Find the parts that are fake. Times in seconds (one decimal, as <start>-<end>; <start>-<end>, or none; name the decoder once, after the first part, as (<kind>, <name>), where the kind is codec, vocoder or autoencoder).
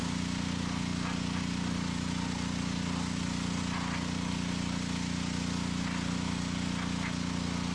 none